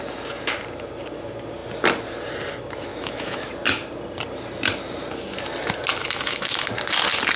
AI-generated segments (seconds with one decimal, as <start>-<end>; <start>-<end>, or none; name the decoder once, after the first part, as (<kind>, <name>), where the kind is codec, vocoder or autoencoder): 2.9-3.5 (autoencoder, DAC-VAE); 6.0-6.7